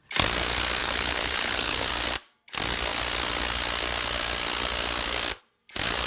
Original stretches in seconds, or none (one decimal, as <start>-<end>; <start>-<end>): 0.0-0.8; 1.9-6.1